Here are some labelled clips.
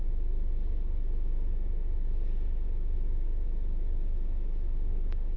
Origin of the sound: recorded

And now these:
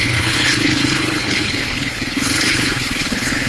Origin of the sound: remade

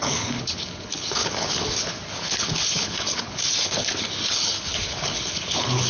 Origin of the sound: remade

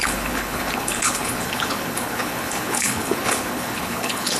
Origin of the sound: remade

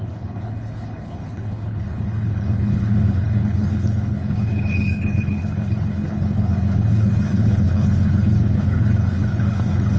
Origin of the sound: remade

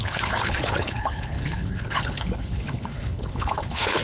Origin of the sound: remade